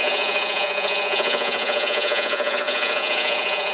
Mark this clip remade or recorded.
remade